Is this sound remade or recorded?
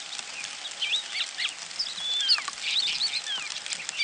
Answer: recorded